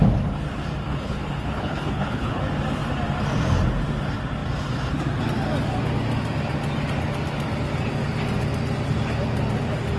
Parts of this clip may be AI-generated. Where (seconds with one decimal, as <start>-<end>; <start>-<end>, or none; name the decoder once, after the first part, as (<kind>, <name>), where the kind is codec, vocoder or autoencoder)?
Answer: 0.9-2.4 (codec, HILCodec)